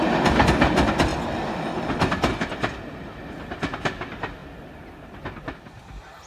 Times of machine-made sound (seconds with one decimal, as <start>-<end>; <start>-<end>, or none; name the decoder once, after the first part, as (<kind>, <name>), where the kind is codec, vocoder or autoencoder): 4.4-6.3 (vocoder, BigVGAN v2)